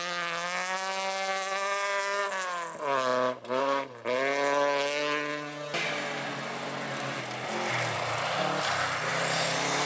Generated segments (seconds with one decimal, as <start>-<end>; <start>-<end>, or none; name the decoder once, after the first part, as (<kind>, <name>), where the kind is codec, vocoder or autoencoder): none